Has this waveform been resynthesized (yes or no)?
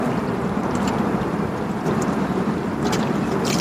no